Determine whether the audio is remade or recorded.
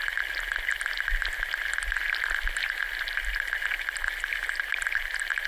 recorded